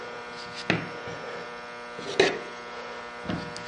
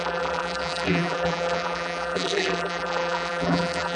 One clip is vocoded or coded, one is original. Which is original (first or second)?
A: first